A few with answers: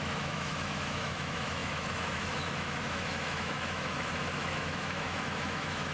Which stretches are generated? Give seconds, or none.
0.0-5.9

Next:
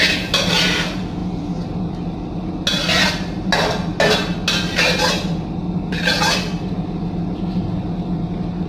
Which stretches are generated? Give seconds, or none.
none

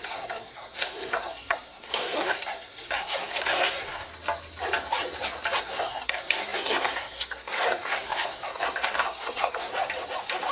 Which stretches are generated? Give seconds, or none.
0.0-4.1; 5.6-9.7

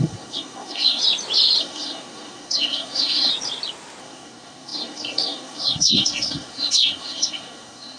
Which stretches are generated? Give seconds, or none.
0.0-1.0; 1.6-3.3; 4.0-8.0